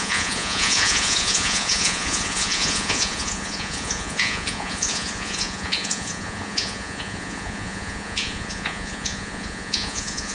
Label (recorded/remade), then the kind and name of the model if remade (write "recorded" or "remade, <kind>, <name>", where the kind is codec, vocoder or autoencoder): remade, vocoder, Vocos